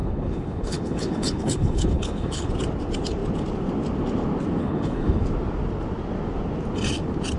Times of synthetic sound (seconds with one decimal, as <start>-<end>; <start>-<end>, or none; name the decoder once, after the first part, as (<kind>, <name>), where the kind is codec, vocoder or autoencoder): 0.0-2.5 (codec, HILCodec); 4.6-5.2